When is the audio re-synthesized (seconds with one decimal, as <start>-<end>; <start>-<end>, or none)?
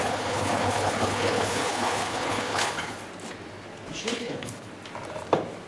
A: 0.0-3.0; 4.0-4.7